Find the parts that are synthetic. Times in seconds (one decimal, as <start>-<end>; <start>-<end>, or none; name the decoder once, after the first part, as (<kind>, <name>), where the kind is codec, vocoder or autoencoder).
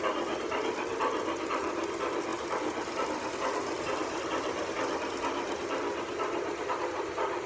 none